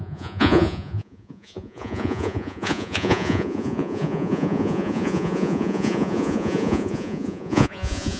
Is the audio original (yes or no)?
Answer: no